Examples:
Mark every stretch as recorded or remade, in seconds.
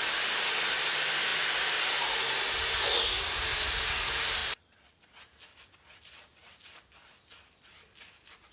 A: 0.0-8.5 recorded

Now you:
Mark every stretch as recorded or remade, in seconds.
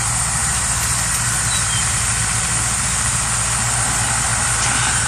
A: 0.0-0.4 recorded; 0.4-3.2 remade; 3.2-4.3 recorded; 4.3-5.1 remade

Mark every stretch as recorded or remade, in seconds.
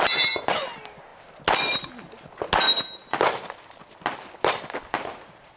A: 0.0-5.6 recorded